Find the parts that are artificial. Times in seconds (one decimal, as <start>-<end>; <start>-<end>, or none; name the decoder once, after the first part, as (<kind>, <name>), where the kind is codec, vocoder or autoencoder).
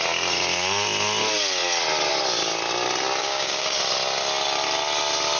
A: 3.2-3.8 (codec, DAC)